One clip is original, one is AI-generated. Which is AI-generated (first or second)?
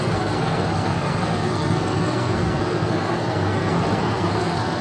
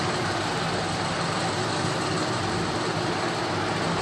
first